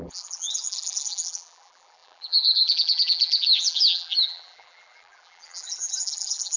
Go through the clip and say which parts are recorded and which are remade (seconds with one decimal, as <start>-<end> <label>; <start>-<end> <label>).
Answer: 0.0-6.6 remade